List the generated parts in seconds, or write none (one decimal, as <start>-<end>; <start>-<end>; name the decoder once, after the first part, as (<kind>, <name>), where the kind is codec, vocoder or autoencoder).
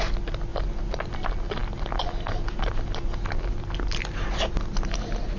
none